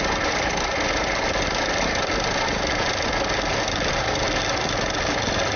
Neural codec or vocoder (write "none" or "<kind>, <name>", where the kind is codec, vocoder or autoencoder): none